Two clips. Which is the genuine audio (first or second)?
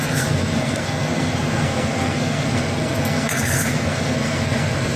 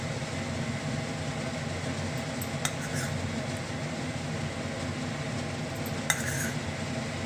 second